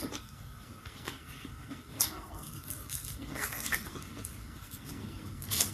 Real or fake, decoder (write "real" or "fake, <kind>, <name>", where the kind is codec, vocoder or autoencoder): fake, codec, SNAC